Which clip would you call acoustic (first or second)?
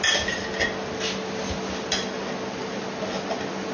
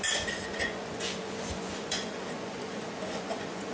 first